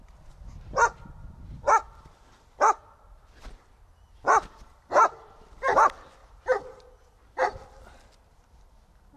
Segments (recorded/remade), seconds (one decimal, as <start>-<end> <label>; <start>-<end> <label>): 0.0-6.2 recorded; 6.2-6.8 remade; 6.8-9.2 recorded